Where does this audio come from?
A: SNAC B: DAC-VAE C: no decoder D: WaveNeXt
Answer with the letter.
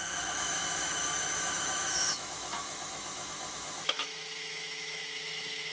B